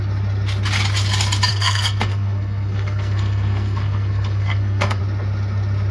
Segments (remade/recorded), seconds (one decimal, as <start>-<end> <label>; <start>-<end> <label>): 0.0-1.5 recorded; 1.5-5.0 remade; 5.0-5.9 recorded

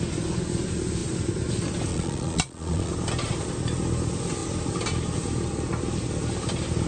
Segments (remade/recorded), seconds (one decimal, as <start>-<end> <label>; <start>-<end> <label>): 0.0-1.9 recorded; 1.9-2.9 remade; 2.9-6.9 recorded

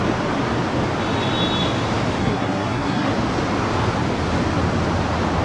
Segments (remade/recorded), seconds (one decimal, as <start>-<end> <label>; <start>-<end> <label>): 0.0-2.2 recorded; 2.2-3.1 remade; 3.1-5.4 recorded

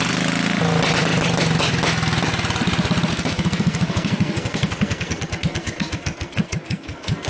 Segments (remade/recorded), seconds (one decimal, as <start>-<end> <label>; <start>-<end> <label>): 0.0-3.1 recorded; 3.1-7.3 remade

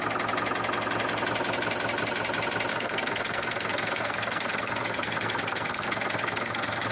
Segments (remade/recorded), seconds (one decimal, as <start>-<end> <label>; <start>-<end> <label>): 0.0-2.7 recorded; 2.7-6.9 remade